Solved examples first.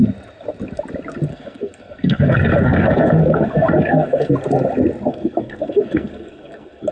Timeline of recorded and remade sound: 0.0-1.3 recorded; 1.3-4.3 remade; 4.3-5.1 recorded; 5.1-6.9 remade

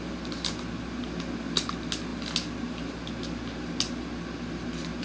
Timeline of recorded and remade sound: 0.0-5.0 recorded

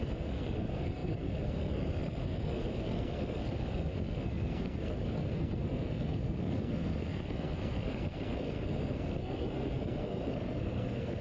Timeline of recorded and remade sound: 0.0-11.2 remade

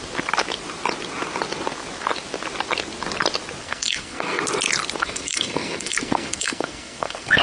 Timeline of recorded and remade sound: 0.0-3.6 recorded; 3.6-4.4 remade; 4.4-5.0 recorded; 5.0-7.4 remade